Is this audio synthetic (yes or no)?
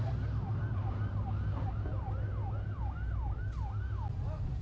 no